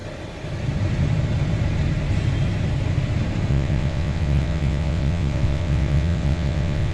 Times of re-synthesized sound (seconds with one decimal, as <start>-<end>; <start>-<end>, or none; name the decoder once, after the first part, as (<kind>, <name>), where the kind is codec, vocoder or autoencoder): 3.5-6.9 (vocoder, WaveNeXt)